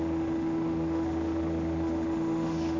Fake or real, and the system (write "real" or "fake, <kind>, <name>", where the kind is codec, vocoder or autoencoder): fake, autoencoder, DAC-VAE